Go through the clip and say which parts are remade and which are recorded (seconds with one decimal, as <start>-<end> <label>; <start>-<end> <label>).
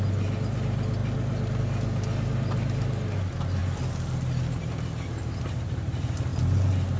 0.0-7.0 recorded